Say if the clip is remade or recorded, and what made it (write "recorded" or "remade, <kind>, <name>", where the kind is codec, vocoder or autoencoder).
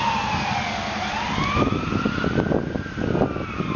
recorded